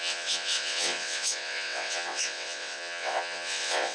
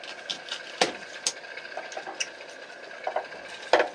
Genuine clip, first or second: second